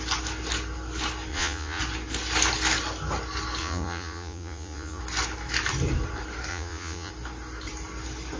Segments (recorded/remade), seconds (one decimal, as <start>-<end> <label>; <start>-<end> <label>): 0.0-1.3 recorded; 1.3-1.8 remade; 1.8-3.6 recorded; 3.6-5.0 remade; 5.0-6.5 recorded; 6.5-7.1 remade; 7.1-8.4 recorded